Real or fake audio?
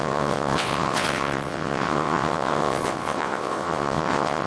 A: fake